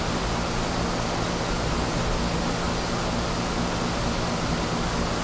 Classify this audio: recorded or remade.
recorded